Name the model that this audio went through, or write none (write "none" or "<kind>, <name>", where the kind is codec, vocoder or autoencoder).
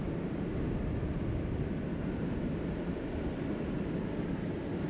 none